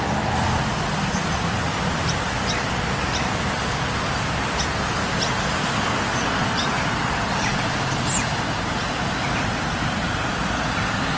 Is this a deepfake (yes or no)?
no